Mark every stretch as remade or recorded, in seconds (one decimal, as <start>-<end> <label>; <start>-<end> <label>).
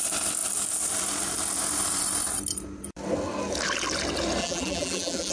0.0-4.4 recorded; 4.4-5.3 remade